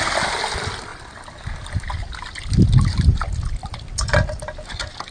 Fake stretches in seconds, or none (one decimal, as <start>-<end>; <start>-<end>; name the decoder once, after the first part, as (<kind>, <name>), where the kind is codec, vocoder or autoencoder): 0.9-2.2 (vocoder, BigVGAN v2)